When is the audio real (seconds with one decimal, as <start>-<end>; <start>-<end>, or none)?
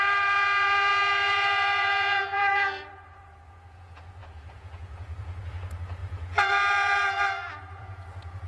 none